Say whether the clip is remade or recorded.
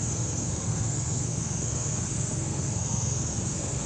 remade